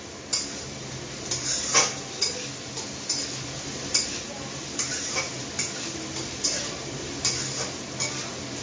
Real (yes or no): yes